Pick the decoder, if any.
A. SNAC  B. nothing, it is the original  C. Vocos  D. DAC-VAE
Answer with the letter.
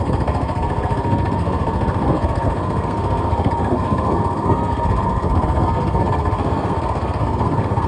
A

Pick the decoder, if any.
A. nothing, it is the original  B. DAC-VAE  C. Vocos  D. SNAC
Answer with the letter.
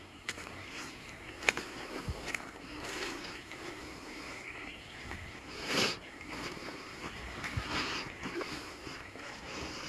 D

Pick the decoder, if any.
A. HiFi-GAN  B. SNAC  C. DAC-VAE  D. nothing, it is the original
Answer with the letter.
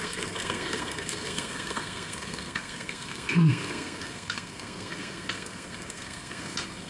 B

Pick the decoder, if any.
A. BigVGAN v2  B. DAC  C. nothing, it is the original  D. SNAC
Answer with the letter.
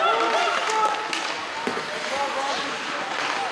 C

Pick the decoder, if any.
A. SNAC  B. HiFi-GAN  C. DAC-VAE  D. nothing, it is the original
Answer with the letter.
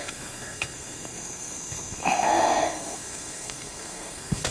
A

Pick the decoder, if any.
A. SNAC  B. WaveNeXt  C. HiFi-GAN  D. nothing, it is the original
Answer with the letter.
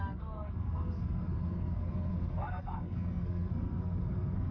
A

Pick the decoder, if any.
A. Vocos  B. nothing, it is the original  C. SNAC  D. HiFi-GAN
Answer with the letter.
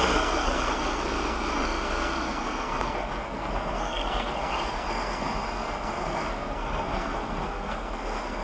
C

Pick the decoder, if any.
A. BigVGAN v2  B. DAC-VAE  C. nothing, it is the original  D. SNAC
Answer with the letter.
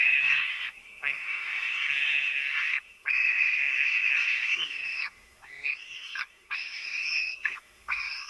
D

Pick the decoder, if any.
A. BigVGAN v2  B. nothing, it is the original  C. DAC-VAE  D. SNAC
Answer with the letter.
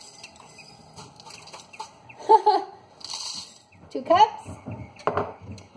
B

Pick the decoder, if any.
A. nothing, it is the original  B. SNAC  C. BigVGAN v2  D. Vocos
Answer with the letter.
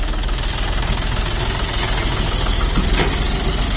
A